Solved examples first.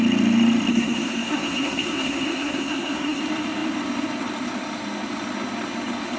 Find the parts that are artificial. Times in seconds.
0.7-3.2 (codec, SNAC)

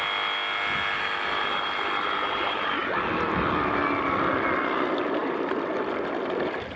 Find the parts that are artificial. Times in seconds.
none

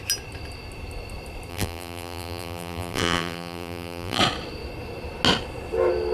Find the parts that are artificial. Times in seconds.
1.5-4.2 (vocoder, BigVGAN v2)